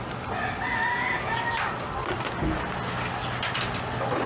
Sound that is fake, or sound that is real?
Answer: real